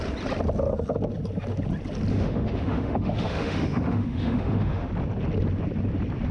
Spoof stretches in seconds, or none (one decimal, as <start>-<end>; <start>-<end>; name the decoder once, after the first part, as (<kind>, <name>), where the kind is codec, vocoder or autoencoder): 2.1-4.9 (autoencoder, DAC-VAE)